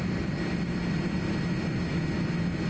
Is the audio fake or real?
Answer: real